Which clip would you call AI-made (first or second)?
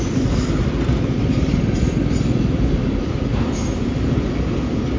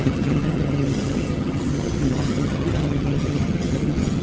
second